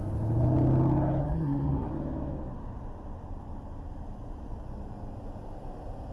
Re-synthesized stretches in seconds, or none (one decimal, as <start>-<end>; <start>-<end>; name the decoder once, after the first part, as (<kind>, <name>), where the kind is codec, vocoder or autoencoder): 1.2-1.9 (codec, SNAC)